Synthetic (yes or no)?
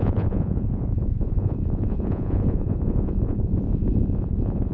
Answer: yes